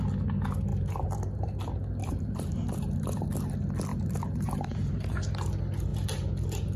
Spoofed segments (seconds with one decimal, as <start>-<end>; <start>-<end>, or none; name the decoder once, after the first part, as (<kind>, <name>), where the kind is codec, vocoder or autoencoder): 0.7-1.6 (vocoder, BigVGAN v2); 2.0-3.3; 3.9-5.3; 5.9-6.8

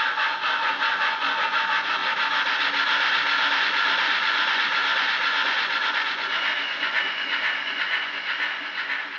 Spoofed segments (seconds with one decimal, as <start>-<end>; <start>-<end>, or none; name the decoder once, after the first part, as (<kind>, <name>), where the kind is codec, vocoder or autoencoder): 0.0-2.0 (vocoder, Vocos); 3.6-9.2